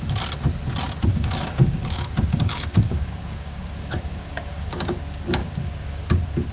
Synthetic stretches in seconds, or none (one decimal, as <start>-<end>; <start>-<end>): 1.1-5.0; 5.4-6.1

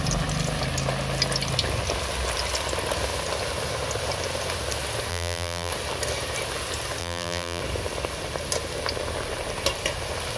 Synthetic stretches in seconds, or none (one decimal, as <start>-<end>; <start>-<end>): 5.1-5.7; 7.0-7.6

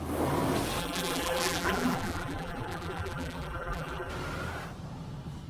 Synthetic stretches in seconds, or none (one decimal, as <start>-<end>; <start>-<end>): 0.8-4.1

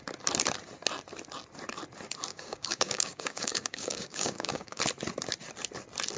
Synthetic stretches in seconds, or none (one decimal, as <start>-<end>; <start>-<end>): 2.3-4.8

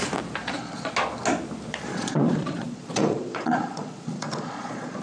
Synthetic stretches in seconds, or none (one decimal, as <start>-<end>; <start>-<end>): 0.4-0.9; 1.9-5.0

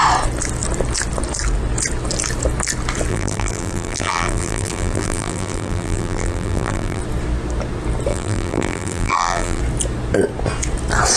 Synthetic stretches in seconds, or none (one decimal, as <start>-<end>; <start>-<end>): 3.1-7.0; 8.1-9.6

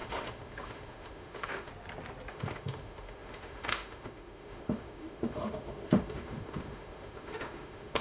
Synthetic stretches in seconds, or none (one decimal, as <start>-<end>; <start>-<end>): 0.0-1.7; 2.3-8.0

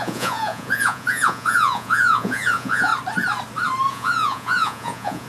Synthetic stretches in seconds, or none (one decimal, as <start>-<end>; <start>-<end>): 0.0-2.9; 3.9-5.3